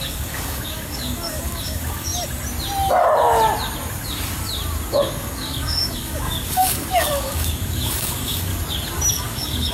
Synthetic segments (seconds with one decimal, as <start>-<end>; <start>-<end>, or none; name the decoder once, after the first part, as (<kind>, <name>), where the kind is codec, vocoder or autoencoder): 0.0-2.1 (codec, DAC); 4.9-8.5; 9.1-9.7